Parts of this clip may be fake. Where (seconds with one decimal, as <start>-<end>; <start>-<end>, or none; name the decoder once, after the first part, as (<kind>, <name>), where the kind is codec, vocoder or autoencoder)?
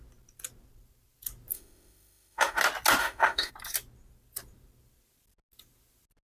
1.5-2.6 (autoencoder, DAC-VAE); 3.0-3.5